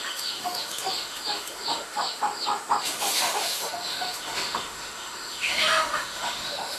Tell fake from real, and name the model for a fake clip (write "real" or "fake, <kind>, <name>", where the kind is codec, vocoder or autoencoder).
fake, autoencoder, DAC-VAE